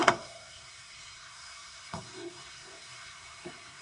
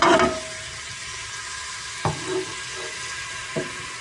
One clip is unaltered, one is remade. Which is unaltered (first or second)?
second